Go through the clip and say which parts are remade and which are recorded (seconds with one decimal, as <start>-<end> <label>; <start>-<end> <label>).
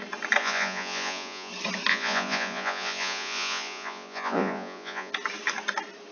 0.0-0.4 recorded; 0.4-1.5 remade; 1.5-1.9 recorded; 1.9-5.1 remade; 5.1-6.1 recorded